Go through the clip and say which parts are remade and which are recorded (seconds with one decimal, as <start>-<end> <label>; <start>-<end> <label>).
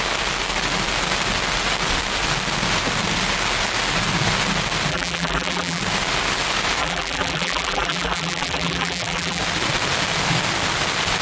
0.0-4.9 recorded; 4.9-5.8 remade; 5.8-6.8 recorded; 6.8-9.4 remade; 9.4-11.2 recorded